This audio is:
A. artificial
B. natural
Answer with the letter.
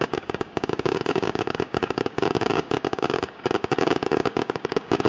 A